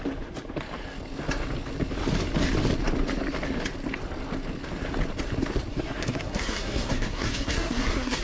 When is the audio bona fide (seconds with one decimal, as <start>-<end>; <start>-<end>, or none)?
0.0-5.7

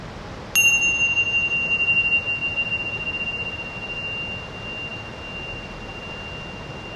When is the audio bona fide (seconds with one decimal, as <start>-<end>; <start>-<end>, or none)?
0.0-7.0

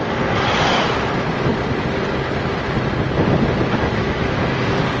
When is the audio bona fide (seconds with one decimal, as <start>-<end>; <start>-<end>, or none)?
0.0-3.8; 4.4-5.0

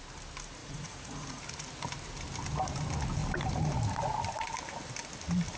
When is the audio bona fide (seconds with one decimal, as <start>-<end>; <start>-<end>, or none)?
0.0-0.6; 1.4-5.6

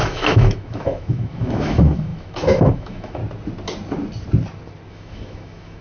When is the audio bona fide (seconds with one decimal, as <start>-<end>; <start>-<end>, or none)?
3.2-4.9

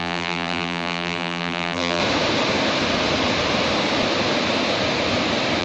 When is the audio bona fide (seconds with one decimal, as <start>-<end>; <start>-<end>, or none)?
2.0-5.6

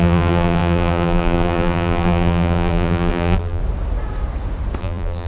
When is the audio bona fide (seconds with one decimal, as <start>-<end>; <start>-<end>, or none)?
3.6-4.8